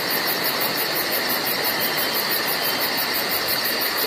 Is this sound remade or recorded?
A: remade